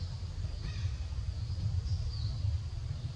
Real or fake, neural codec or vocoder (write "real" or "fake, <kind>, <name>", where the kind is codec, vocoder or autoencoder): real